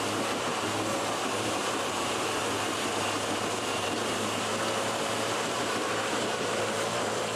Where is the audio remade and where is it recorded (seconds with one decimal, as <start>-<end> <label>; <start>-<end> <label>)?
0.0-2.4 remade; 2.4-3.5 recorded; 3.5-4.5 remade; 4.5-5.1 recorded; 5.1-7.4 remade